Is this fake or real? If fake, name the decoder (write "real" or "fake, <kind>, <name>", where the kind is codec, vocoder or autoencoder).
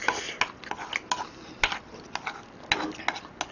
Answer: real